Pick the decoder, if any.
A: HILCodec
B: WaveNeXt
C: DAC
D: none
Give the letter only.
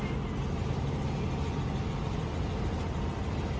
D